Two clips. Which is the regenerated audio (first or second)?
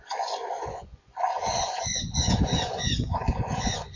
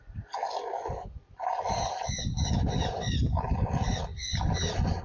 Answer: first